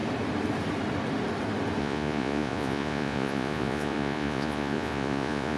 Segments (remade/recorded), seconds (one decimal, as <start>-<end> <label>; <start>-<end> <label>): 0.0-1.8 recorded; 1.8-5.6 remade